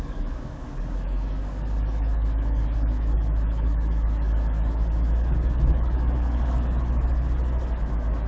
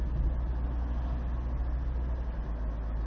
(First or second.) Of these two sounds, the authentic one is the second